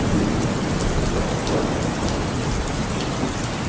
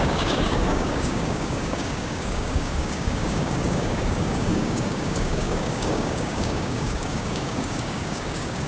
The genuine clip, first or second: first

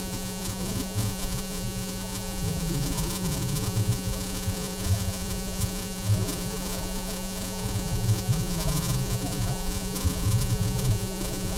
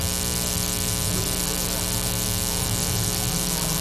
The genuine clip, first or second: second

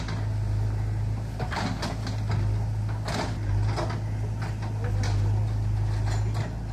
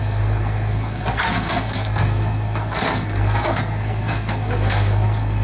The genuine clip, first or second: first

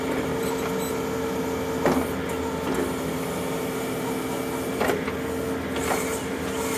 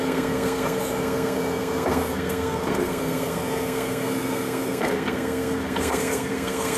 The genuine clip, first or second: first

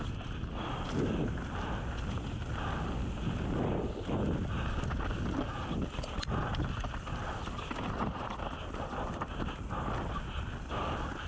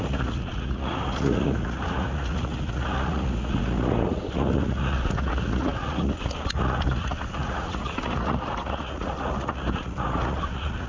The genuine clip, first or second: first